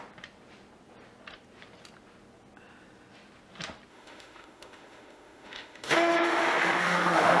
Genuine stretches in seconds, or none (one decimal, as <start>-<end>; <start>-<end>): 0.0-3.9